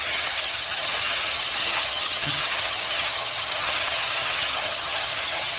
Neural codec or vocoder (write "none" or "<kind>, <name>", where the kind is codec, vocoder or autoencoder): vocoder, HiFi-GAN